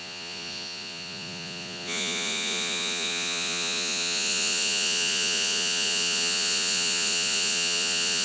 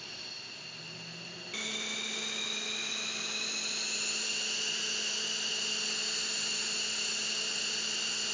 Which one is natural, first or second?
second